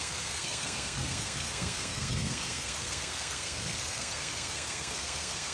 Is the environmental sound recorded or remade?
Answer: remade